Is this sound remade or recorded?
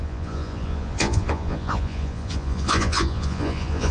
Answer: remade